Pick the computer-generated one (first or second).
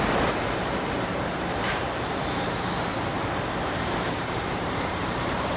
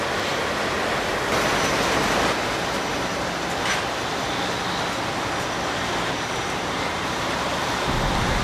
first